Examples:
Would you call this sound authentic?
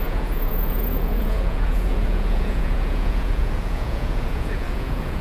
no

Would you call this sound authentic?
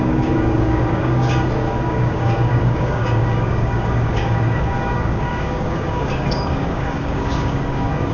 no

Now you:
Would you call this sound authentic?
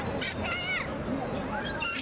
yes